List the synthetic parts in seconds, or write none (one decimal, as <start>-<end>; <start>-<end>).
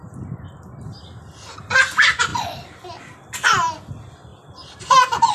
none